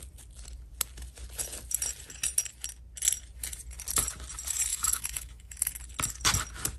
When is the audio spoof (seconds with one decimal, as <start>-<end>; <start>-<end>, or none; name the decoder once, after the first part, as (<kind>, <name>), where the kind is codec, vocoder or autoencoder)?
4.7-5.7 (autoencoder, DAC-VAE)